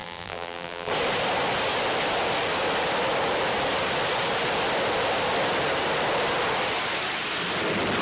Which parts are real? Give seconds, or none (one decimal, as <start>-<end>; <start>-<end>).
0.9-8.0